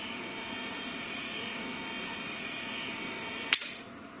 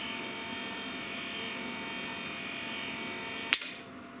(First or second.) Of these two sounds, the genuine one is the second